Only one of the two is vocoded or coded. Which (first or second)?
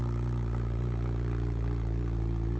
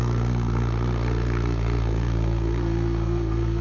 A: second